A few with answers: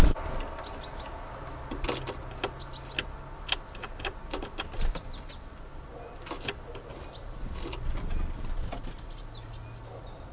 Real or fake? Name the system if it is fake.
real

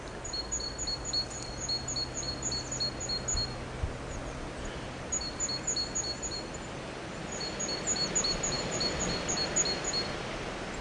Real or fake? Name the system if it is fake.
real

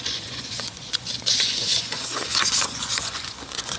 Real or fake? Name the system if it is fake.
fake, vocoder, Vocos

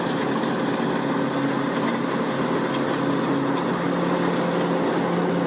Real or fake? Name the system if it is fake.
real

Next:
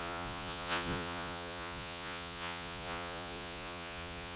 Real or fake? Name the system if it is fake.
fake, vocoder, Vocos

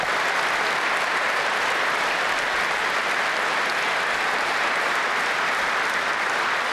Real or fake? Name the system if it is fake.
real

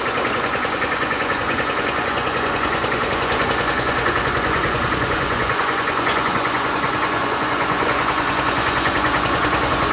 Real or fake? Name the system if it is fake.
fake, vocoder, Vocos